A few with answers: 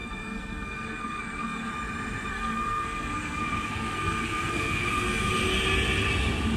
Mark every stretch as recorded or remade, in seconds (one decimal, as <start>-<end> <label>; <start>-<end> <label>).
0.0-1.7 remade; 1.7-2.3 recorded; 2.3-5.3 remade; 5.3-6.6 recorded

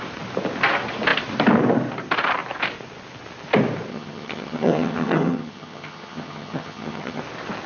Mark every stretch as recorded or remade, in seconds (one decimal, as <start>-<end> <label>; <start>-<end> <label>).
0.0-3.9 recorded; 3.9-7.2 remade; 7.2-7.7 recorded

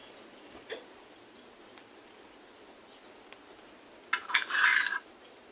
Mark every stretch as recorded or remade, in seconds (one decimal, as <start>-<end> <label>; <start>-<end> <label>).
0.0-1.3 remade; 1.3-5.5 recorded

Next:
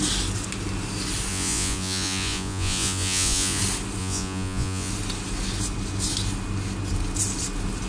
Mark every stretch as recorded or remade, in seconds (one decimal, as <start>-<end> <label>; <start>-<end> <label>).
0.0-1.3 recorded; 1.3-3.6 remade; 3.6-4.0 recorded; 4.0-4.9 remade; 4.9-7.9 recorded